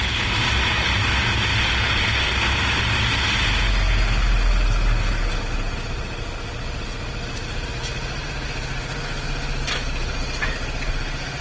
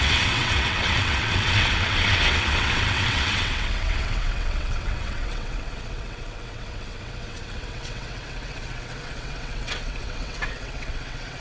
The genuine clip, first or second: first